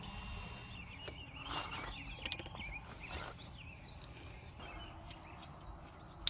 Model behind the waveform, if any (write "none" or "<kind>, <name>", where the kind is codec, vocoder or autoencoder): none